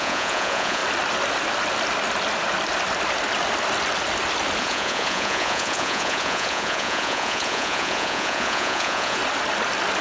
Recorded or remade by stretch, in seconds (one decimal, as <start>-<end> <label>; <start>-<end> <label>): 0.0-0.8 remade; 0.8-4.6 recorded; 4.6-9.2 remade; 9.2-10.0 recorded